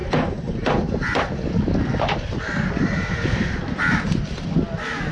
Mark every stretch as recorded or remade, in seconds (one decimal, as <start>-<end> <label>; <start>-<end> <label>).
0.0-5.1 recorded